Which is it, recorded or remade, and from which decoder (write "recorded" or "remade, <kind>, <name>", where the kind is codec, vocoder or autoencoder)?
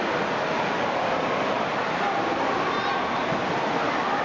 recorded